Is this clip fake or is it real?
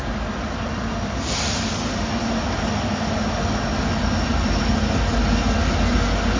real